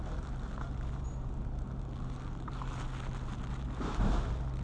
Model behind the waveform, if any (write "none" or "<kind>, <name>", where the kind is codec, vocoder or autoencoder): none